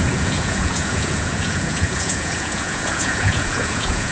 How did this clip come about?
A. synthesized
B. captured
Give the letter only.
A